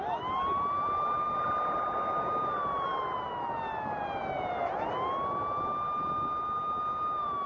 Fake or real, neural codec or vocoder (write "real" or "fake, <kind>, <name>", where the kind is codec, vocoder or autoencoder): real